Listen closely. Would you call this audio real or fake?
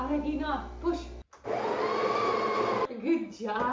real